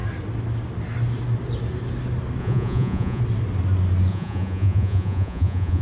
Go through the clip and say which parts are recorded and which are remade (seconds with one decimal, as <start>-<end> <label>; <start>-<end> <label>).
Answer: 0.0-2.4 recorded; 2.4-3.2 remade; 3.2-4.1 recorded; 4.1-5.8 remade

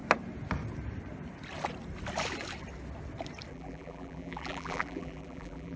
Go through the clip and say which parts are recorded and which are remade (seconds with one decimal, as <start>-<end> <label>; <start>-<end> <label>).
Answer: 0.0-3.5 recorded; 3.5-5.8 remade

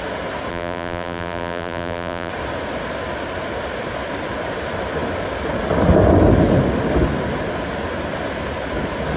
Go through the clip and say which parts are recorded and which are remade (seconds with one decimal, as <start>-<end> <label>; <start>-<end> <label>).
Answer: 0.0-0.5 recorded; 0.5-2.3 remade; 2.3-9.2 recorded

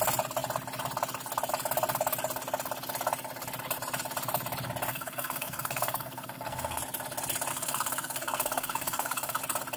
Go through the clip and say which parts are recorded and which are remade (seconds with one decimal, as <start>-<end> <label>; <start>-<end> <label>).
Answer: 0.0-4.9 recorded; 4.9-6.8 remade; 6.8-7.5 recorded; 7.5-9.4 remade; 9.4-9.8 recorded

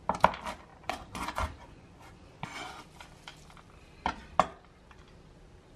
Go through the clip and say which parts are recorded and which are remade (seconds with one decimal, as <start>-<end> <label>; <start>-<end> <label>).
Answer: 0.0-0.7 recorded; 0.7-2.8 remade; 2.8-5.8 recorded

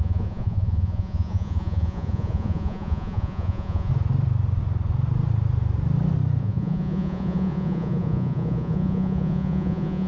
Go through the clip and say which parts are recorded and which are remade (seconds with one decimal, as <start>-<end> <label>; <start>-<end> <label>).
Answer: 0.0-3.9 remade; 3.9-6.4 recorded; 6.4-10.1 remade

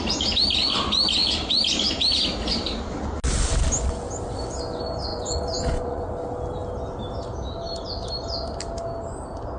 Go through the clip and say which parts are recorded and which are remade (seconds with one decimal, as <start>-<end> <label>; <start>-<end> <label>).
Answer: 0.0-5.1 recorded; 5.1-6.1 remade; 6.1-9.6 recorded